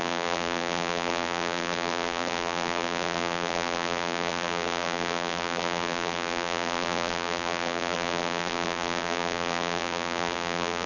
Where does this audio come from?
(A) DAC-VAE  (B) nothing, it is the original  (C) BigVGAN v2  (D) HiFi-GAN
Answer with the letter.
C